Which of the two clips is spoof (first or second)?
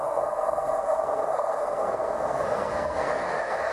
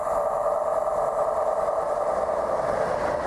first